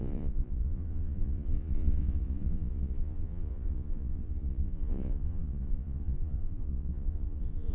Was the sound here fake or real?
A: fake